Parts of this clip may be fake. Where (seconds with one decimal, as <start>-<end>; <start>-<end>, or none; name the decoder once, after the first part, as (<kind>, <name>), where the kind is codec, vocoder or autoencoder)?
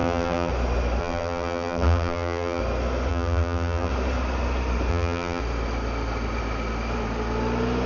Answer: 0.0-0.5 (vocoder, BigVGAN v2); 1.0-2.6; 3.1-3.9; 4.9-5.4